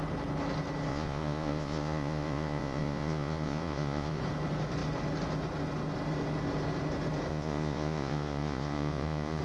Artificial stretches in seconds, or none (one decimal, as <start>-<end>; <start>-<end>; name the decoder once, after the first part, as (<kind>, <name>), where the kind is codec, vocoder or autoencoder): 0.9-4.2 (vocoder, Vocos); 7.3-9.4